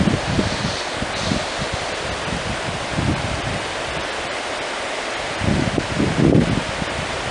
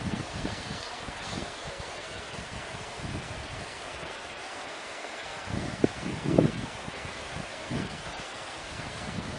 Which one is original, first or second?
first